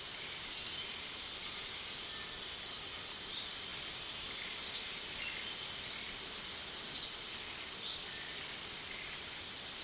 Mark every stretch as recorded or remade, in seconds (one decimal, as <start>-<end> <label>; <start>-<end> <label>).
0.0-1.4 recorded; 1.4-2.1 remade; 2.1-9.8 recorded